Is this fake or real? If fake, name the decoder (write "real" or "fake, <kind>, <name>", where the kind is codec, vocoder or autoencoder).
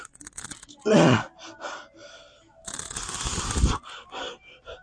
real